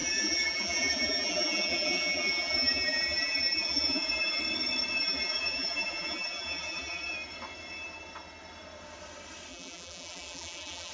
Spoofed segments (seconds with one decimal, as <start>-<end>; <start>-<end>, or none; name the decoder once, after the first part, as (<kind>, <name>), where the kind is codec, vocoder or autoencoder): 0.0-4.4 (vocoder, BigVGAN v2); 5.0-7.1; 9.5-10.9